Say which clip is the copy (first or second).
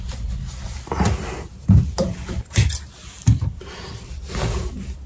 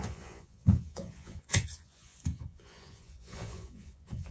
second